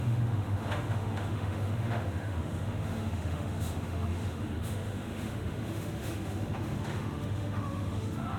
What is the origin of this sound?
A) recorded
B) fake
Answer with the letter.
B